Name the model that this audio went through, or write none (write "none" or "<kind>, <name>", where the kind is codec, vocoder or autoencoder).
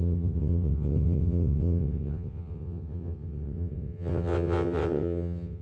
vocoder, WaveNeXt